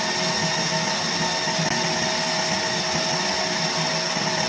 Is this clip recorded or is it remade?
recorded